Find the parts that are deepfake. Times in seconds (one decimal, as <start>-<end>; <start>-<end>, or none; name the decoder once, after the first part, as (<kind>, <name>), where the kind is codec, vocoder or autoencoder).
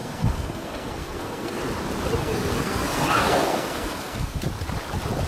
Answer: 0.0-1.6 (codec, SNAC); 2.2-4.4